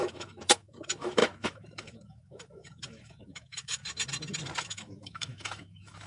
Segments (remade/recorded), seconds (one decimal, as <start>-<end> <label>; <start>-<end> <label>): 0.0-3.8 remade; 3.8-4.6 recorded; 4.6-6.1 remade